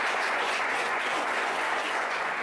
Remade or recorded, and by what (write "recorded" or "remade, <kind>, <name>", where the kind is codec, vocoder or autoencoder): remade, vocoder, Vocos